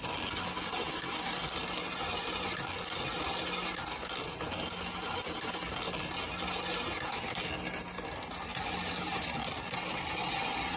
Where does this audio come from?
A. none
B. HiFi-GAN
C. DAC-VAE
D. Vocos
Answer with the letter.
A